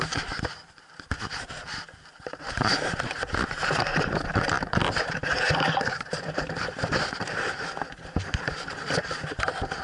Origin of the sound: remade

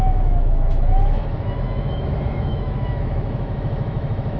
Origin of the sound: remade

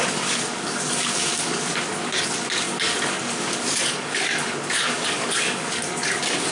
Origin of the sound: remade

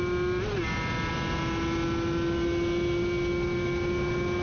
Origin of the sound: recorded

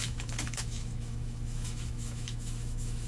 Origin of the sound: remade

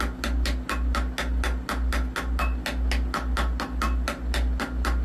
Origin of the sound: recorded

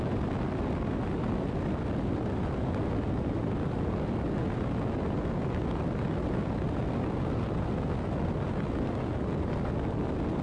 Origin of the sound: recorded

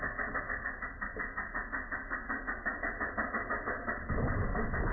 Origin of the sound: recorded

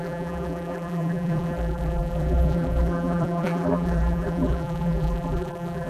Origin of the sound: remade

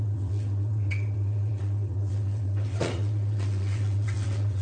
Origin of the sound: remade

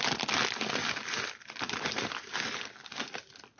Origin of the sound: recorded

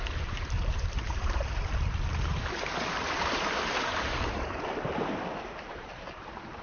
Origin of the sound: remade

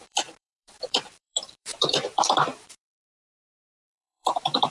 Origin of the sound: remade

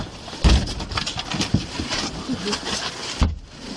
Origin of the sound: recorded